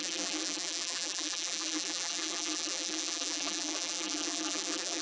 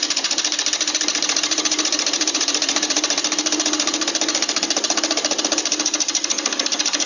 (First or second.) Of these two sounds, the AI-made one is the first